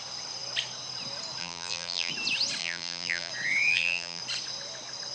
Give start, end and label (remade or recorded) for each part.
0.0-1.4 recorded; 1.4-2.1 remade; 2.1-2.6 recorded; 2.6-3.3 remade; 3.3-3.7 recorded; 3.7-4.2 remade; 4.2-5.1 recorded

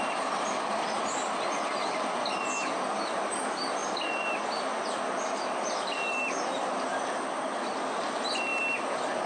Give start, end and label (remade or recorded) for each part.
0.0-9.3 recorded

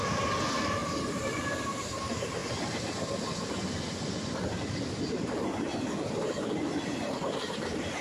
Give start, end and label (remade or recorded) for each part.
0.0-2.4 remade; 2.4-6.5 recorded; 6.5-8.0 remade

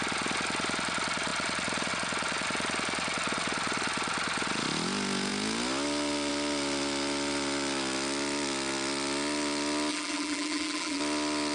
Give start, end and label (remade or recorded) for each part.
0.0-9.9 recorded; 9.9-11.0 remade; 11.0-11.5 recorded

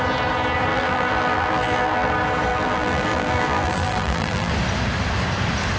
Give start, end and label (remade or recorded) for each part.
0.0-0.7 recorded; 0.7-2.1 remade; 2.1-2.5 recorded; 2.5-4.5 remade; 4.5-5.8 recorded

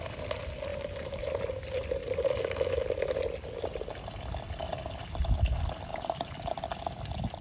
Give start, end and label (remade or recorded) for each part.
0.0-0.7 recorded; 0.7-1.3 remade; 1.3-5.9 recorded; 5.9-6.6 remade; 6.6-7.4 recorded